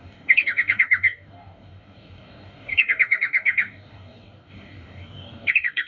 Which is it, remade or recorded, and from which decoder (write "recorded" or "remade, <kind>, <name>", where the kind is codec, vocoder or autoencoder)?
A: remade, codec, DAC